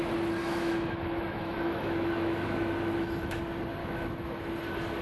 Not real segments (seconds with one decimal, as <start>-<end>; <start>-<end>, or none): 0.4-3.4; 3.8-4.5